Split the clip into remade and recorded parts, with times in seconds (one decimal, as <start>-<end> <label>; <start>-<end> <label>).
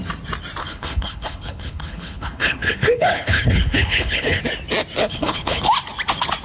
0.0-0.6 recorded; 0.6-4.4 remade; 4.4-5.0 recorded; 5.0-5.6 remade; 5.6-6.4 recorded